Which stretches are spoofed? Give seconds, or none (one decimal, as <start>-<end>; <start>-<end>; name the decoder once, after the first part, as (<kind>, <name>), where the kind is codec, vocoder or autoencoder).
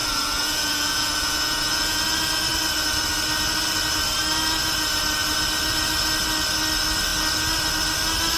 0.0-2.0 (vocoder, Vocos)